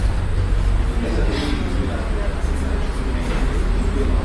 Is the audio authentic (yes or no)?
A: yes